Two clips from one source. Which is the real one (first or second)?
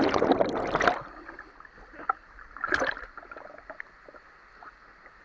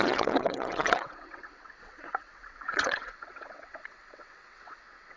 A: first